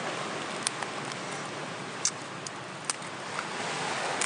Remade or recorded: recorded